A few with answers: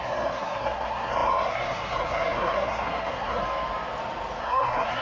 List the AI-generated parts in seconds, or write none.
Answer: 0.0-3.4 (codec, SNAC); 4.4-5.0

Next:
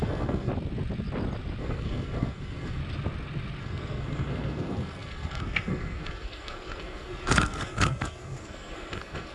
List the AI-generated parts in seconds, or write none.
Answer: 0.0-0.5 (codec, SNAC); 1.6-2.8; 3.6-9.3

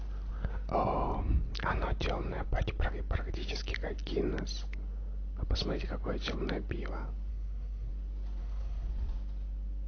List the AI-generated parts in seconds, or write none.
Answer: 7.3-7.9 (codec, SNAC); 8.4-8.9

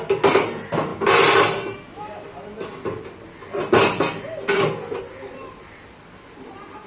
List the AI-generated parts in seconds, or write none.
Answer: none

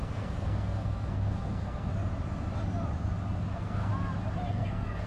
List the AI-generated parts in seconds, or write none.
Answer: 0.0-1.9 (codec, SNAC); 3.4-3.9; 4.5-5.1

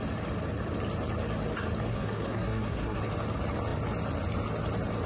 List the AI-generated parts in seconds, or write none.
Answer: 1.9-3.0 (codec, SNAC)

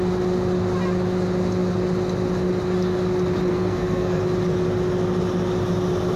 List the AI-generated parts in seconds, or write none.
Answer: 3.5-4.2 (codec, SNAC)